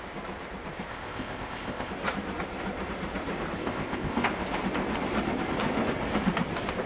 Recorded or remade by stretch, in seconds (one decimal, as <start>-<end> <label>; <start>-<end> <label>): 0.0-0.9 recorded; 0.9-1.9 remade; 1.9-3.6 recorded; 3.6-4.3 remade; 4.3-6.9 recorded